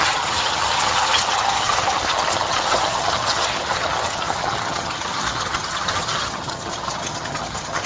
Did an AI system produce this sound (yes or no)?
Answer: yes